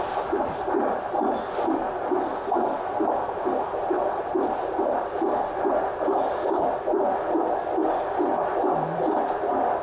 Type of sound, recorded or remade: remade